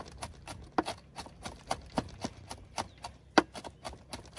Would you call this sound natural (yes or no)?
yes